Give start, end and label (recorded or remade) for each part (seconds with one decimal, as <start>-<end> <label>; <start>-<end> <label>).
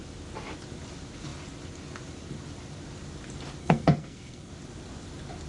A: 0.0-3.6 recorded; 3.6-4.5 remade; 4.5-5.5 recorded